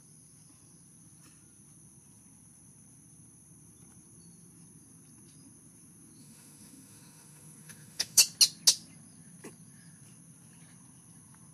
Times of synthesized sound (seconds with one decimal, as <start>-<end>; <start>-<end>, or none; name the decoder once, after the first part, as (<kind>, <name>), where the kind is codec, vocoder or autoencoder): 6.2-8.2 (autoencoder, DAC-VAE)